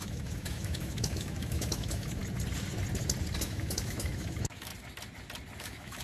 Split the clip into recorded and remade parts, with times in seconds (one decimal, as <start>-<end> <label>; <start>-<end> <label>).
0.0-2.2 remade; 2.2-3.4 recorded; 3.4-4.7 remade; 4.7-5.6 recorded; 5.6-6.0 remade